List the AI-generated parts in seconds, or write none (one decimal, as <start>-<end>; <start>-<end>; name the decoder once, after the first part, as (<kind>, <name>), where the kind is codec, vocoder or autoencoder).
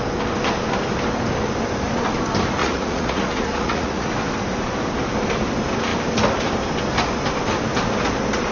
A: 2.6-4.1 (vocoder, Vocos)